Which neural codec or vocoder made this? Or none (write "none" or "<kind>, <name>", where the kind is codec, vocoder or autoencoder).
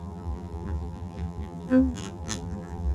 vocoder, BigVGAN v2